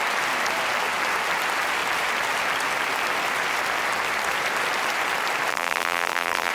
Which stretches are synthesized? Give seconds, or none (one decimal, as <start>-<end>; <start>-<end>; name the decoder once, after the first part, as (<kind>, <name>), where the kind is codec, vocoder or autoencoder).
5.5-6.5 (vocoder, BigVGAN v2)